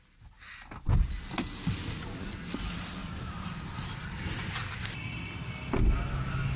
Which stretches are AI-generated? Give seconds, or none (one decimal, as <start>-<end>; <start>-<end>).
3.0-4.5